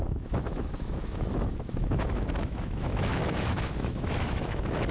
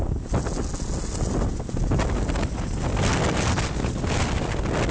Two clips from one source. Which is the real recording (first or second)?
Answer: second